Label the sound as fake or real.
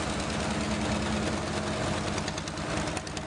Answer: real